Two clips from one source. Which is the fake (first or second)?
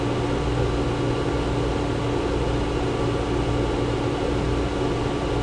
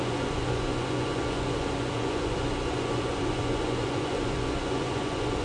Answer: second